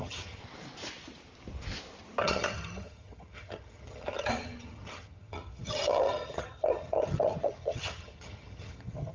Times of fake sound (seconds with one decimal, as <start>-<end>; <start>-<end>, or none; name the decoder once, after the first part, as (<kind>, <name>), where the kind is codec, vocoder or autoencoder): 0.0-0.4 (vocoder, HiFi-GAN); 2.2-9.1

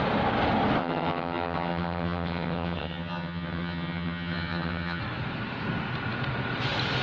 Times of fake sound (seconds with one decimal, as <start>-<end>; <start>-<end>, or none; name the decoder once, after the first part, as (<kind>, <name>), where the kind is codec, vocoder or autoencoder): 0.8-5.0 (vocoder, HiFi-GAN)

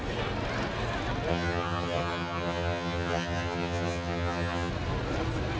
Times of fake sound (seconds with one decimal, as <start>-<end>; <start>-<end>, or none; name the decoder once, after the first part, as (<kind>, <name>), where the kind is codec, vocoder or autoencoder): 1.3-4.7 (vocoder, HiFi-GAN)

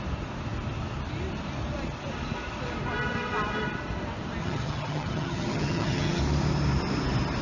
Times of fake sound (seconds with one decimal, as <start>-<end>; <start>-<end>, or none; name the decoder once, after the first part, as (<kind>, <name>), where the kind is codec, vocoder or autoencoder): 4.4-6.2 (vocoder, HiFi-GAN)

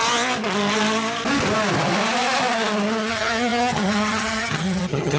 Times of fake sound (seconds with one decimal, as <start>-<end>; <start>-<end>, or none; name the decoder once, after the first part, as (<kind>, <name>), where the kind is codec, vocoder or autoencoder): 3.1-5.2 (vocoder, HiFi-GAN)